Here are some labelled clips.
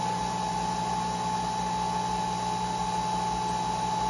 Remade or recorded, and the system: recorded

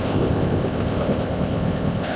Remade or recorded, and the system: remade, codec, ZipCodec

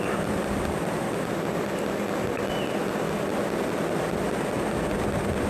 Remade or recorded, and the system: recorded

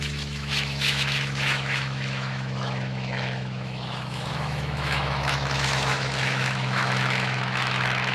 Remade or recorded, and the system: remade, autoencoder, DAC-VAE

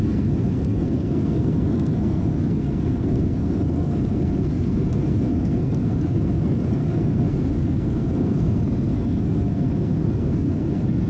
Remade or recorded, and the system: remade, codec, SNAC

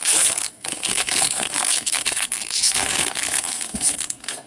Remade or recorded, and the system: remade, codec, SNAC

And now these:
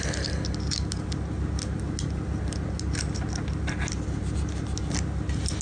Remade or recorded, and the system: recorded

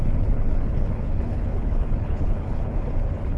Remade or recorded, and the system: remade, codec, HILCodec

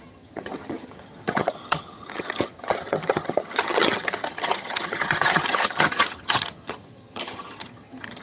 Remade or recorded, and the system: remade, vocoder, HiFi-GAN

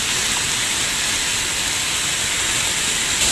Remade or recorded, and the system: recorded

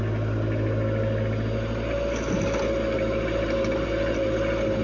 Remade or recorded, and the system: recorded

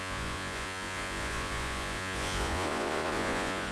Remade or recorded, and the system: remade, vocoder, Vocos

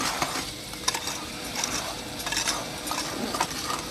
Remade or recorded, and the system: recorded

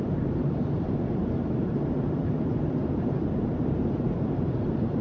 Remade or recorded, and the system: remade, vocoder, BigVGAN v2